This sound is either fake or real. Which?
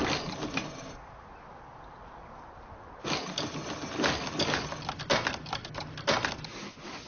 real